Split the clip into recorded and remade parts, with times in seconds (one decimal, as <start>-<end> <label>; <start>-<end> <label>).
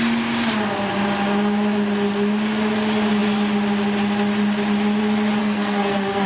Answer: 0.0-5.4 recorded; 5.4-6.3 remade